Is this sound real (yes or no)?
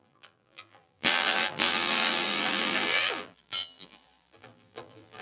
no